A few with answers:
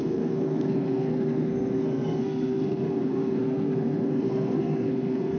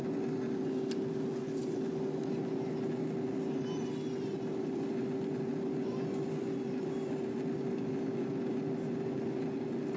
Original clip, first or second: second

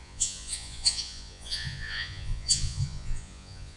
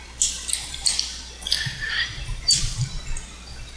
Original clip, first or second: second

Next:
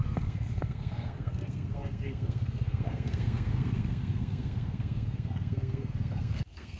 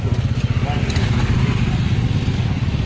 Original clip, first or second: second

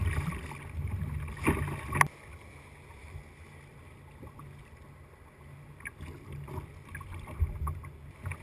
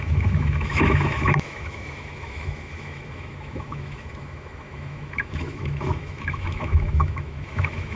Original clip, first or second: first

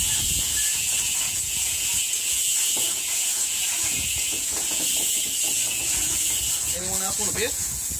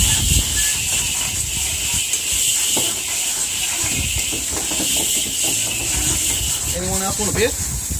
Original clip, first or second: second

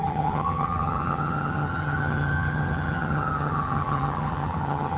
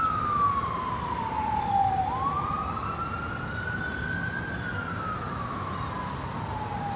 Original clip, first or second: second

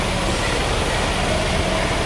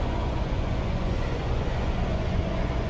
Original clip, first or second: first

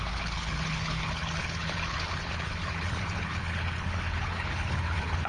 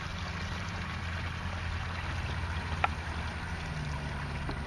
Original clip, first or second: second